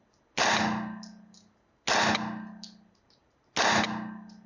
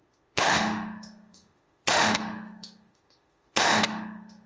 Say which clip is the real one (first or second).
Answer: first